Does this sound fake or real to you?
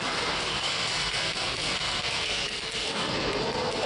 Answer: fake